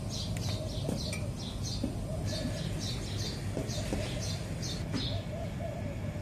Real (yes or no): yes